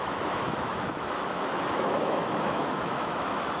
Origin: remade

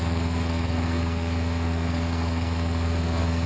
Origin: remade